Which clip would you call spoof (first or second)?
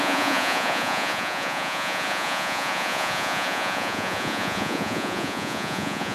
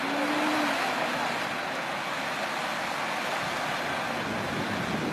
first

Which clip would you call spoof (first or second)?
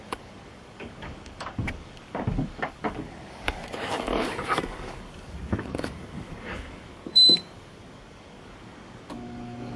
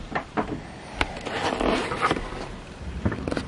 first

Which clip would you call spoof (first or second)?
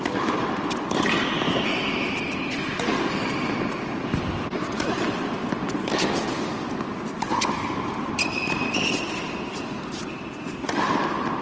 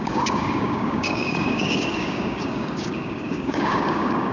second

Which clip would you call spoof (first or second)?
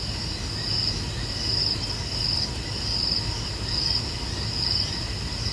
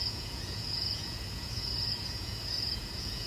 second